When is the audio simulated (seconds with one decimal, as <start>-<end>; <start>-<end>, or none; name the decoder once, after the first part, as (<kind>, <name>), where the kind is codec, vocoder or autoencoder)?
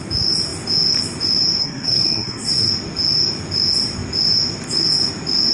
1.6-2.7 (codec, SNAC)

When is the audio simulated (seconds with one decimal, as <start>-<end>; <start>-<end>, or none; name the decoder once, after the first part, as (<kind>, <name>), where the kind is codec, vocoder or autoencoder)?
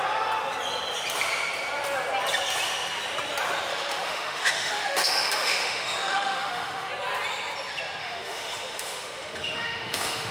3.7-6.9 (autoencoder, DAC-VAE); 8.0-10.3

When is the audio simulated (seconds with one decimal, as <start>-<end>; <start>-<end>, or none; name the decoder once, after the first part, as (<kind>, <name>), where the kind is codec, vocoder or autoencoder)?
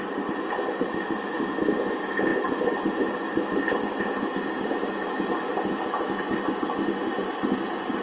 none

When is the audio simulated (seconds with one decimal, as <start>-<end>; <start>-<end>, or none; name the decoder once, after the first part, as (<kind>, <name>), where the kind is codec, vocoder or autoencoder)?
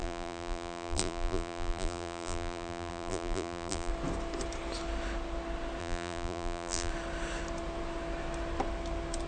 0.0-3.9 (vocoder, BigVGAN v2); 5.8-6.9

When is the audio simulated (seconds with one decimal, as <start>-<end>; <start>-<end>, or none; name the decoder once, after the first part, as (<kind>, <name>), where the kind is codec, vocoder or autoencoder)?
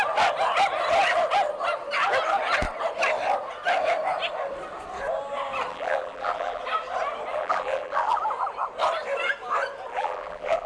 5.7-6.6 (vocoder, BigVGAN v2); 7.3-8.2; 9.9-10.7